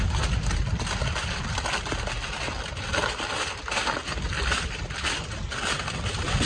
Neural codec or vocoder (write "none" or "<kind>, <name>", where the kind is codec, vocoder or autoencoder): none